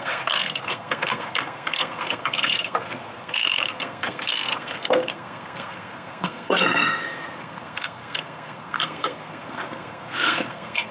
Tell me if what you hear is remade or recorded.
remade